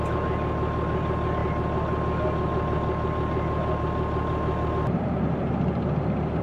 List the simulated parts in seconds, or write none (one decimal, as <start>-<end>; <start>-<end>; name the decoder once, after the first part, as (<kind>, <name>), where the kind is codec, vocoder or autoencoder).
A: none